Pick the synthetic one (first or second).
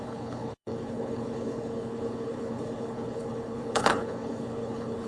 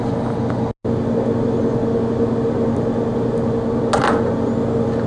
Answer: first